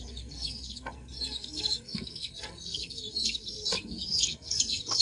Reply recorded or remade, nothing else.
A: remade